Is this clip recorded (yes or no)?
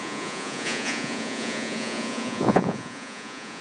no